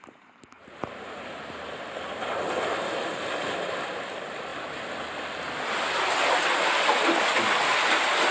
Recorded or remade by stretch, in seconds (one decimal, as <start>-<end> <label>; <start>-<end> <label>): 0.0-8.3 recorded